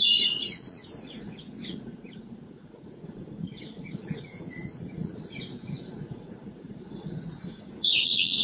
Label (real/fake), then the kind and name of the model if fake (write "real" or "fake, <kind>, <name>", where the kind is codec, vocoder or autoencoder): fake, vocoder, Vocos